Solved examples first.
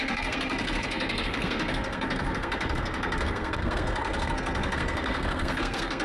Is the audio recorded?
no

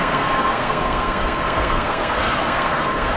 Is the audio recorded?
no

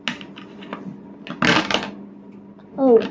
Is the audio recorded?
yes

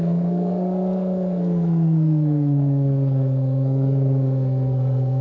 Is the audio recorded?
no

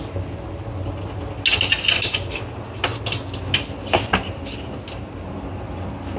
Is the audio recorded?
yes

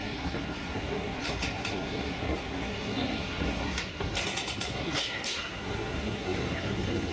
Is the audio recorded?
no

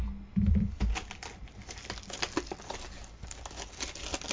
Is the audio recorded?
yes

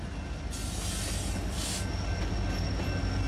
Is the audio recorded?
yes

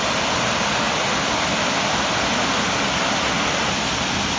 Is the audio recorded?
yes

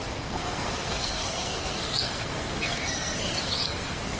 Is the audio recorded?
no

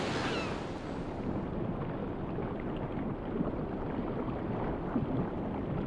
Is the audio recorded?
yes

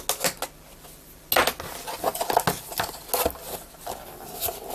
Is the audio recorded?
yes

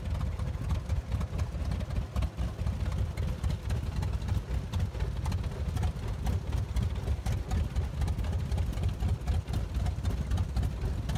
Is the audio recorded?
yes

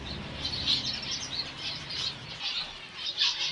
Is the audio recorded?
yes